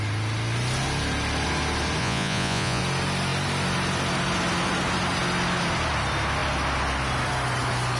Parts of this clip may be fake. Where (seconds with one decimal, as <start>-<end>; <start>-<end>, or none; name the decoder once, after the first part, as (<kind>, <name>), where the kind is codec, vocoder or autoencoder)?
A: 2.0-2.8 (vocoder, Vocos)